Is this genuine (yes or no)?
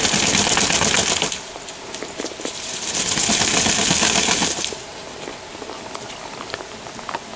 yes